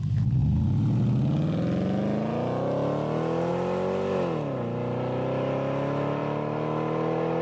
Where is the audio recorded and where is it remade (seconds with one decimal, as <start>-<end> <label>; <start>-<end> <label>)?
0.0-7.4 recorded